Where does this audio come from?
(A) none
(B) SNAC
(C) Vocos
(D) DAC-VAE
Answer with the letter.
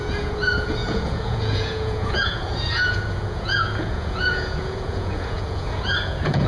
C